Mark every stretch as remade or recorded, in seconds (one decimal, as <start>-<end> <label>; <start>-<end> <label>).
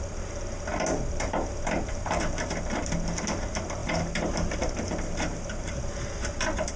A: 0.0-3.8 recorded; 3.8-5.8 remade; 5.8-6.8 recorded